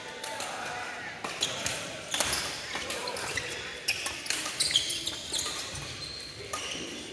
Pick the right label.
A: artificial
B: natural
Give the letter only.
B